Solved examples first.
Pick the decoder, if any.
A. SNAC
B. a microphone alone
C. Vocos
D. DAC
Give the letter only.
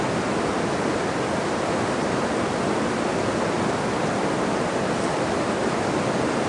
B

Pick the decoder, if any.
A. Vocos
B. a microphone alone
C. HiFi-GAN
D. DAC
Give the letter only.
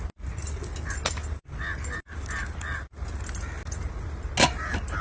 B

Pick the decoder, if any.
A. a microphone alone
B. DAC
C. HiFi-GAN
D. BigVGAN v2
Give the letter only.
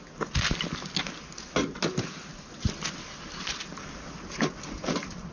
A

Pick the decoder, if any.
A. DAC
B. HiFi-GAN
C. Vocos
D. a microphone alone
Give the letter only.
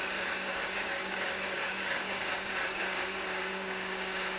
A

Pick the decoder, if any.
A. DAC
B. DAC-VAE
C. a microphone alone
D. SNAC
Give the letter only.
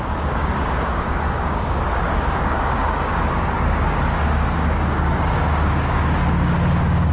A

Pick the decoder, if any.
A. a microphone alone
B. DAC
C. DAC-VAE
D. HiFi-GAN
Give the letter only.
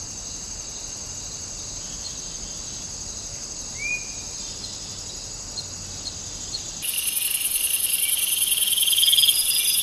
A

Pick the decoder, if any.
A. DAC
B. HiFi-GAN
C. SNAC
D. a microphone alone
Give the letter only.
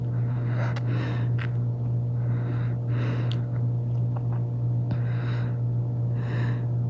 D